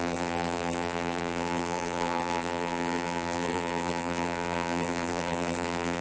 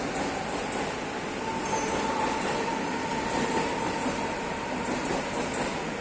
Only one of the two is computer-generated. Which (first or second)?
first